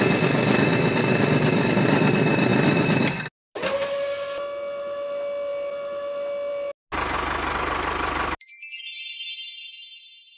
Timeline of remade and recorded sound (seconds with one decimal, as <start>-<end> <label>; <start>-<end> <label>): 0.0-10.4 recorded